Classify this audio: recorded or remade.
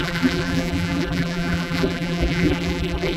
remade